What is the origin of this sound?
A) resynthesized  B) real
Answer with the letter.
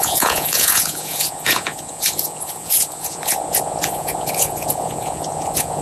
A